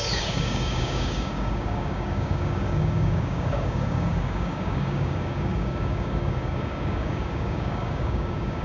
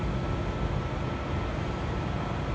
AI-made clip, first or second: first